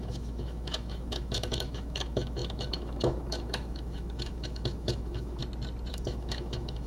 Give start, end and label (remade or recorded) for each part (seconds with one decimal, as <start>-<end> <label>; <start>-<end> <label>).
0.0-5.4 remade; 5.4-5.9 recorded; 5.9-6.9 remade